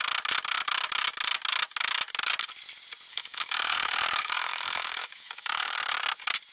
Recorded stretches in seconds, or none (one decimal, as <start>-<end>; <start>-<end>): 0.0-3.1; 5.7-6.5

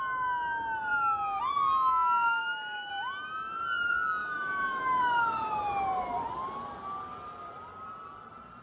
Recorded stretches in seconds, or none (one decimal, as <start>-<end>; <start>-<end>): 0.0-2.4; 2.9-4.2; 5.0-8.6

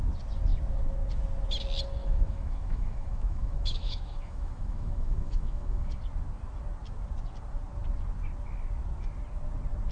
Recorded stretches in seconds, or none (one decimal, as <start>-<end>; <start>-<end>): 0.0-2.0; 6.0-9.9